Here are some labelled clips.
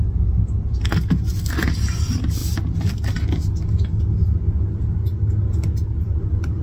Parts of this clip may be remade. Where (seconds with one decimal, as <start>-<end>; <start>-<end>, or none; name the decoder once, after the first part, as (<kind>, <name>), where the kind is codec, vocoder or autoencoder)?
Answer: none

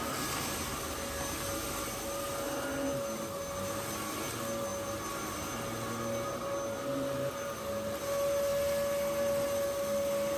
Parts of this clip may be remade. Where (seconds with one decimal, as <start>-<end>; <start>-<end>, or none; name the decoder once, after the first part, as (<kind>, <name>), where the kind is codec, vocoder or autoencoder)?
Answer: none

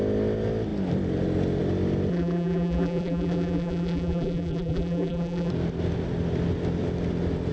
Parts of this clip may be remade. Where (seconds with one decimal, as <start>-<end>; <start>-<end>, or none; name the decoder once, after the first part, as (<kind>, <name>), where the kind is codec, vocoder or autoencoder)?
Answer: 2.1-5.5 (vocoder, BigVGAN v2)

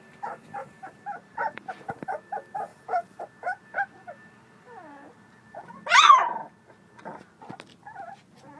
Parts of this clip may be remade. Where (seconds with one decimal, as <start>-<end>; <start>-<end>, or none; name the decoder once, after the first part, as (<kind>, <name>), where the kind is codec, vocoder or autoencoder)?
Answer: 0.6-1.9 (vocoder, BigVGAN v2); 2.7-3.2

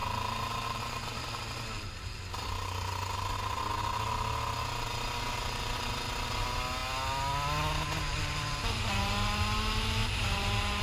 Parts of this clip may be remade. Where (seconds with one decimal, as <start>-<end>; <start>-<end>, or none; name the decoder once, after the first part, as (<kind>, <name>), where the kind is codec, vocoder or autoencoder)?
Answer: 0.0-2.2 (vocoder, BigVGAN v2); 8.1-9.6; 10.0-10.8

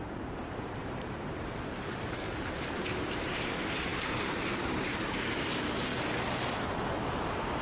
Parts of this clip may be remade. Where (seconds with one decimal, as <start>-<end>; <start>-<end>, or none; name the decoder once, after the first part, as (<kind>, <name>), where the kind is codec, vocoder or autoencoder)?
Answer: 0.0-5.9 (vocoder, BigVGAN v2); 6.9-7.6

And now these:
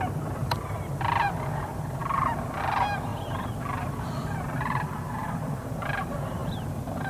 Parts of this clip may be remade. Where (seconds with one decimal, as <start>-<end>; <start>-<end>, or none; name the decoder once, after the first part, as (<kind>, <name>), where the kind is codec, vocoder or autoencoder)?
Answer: 0.0-7.1 (vocoder, BigVGAN v2)